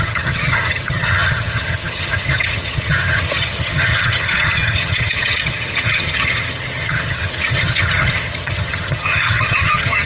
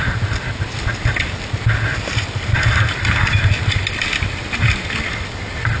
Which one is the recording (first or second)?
second